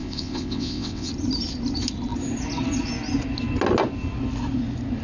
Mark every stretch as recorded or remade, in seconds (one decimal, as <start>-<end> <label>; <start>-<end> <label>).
0.0-1.1 remade; 1.1-5.0 recorded

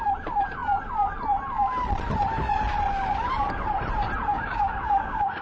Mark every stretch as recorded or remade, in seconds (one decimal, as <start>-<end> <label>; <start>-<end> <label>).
0.0-4.3 recorded; 4.3-5.4 remade

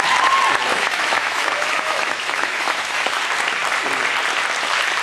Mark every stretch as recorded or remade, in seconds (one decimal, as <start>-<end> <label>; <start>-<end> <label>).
0.0-0.7 recorded; 0.7-3.2 remade; 3.2-5.0 recorded

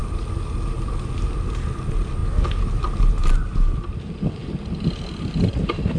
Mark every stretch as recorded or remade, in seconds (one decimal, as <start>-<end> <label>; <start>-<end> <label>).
0.0-6.0 recorded

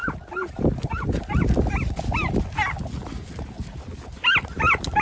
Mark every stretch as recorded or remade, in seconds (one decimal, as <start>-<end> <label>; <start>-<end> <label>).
0.0-5.0 recorded

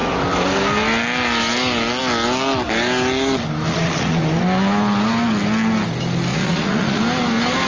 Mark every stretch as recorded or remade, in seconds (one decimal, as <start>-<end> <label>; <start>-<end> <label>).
0.0-3.7 recorded; 3.7-4.2 remade; 4.2-6.3 recorded; 6.3-7.0 remade; 7.0-7.7 recorded

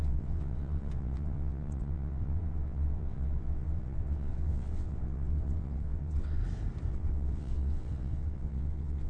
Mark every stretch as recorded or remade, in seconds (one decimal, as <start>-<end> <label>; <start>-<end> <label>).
0.0-6.4 remade; 6.4-6.9 recorded; 6.9-9.1 remade